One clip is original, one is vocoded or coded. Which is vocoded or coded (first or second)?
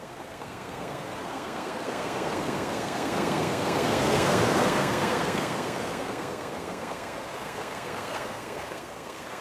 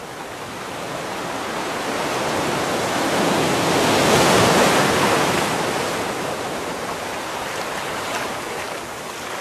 first